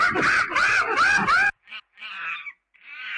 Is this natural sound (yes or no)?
yes